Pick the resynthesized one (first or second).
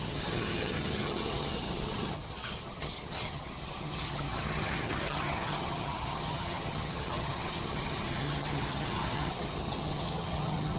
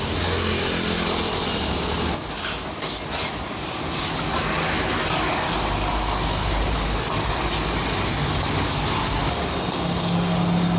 first